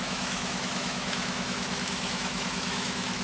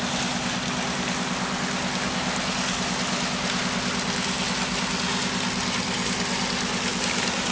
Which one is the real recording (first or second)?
second